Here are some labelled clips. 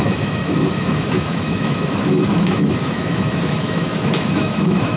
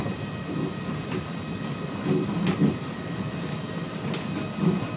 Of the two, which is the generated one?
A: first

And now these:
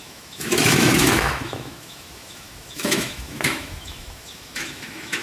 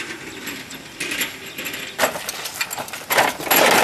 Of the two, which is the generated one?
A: first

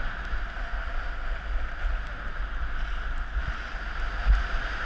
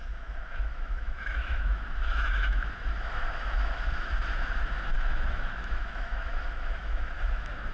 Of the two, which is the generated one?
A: second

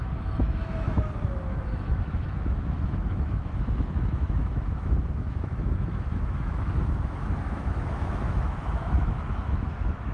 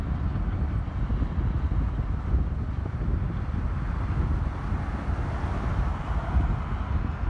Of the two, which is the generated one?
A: first